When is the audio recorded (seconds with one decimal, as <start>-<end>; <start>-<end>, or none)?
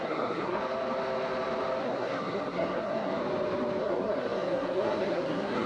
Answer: 0.6-1.8; 3.2-3.8